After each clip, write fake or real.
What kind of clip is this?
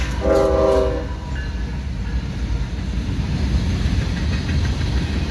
real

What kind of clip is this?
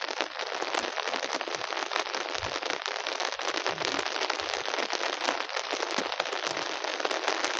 real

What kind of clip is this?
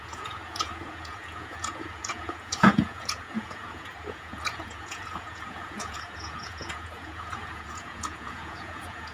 fake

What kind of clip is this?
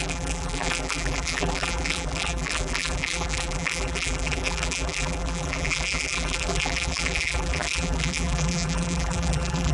fake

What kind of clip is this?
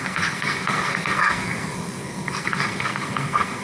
fake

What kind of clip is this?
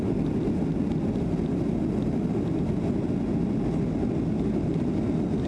real